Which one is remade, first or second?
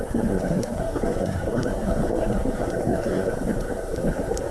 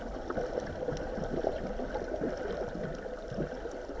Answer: first